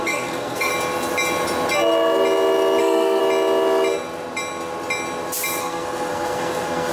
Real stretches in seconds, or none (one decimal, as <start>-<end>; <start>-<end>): 0.7-2.8; 3.2-5.6

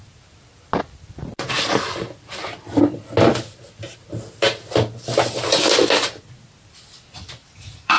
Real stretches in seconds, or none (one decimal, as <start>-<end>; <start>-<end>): 0.0-7.4

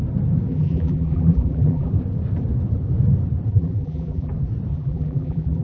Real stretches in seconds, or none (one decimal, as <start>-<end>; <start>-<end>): 0.0-0.5; 1.9-3.5; 4.3-4.7

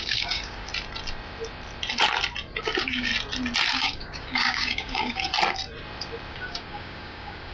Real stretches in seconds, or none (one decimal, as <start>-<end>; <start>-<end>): 0.7-2.6; 3.1-3.7; 5.3-6.3

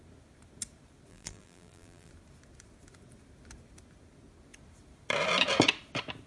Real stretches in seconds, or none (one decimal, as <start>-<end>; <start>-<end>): 0.0-1.1; 2.1-6.3

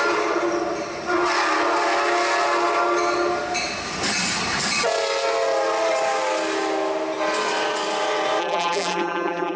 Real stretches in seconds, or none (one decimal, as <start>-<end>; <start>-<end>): 0.0-8.4

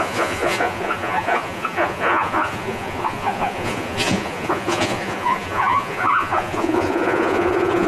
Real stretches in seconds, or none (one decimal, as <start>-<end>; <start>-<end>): none